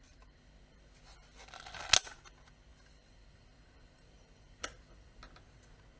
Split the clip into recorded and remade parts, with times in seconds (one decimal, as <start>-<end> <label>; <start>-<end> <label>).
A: 0.0-2.7 recorded; 2.7-5.2 remade; 5.2-6.0 recorded